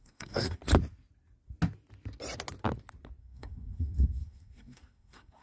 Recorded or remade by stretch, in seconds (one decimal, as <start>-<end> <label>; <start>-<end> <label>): 0.0-0.6 remade; 0.6-3.2 recorded; 3.2-5.4 remade